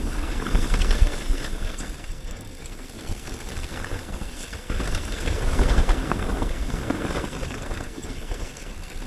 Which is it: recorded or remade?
remade